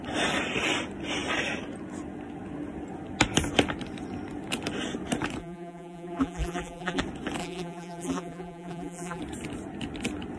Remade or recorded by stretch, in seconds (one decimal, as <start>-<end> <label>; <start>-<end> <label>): 0.0-5.4 recorded; 5.4-7.0 remade; 7.0-7.4 recorded; 7.4-9.2 remade; 9.2-10.4 recorded